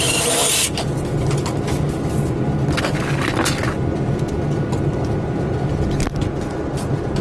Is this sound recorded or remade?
recorded